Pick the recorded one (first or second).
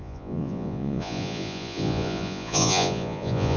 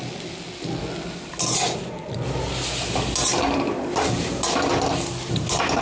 second